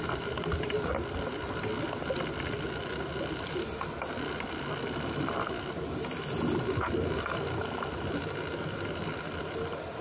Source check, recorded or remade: recorded